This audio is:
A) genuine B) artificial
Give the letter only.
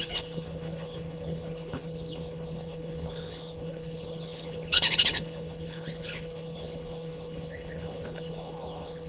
B